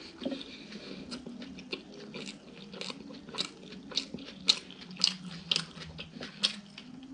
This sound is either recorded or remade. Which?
recorded